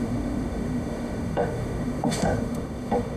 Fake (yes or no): yes